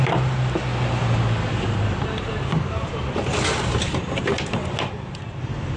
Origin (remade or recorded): recorded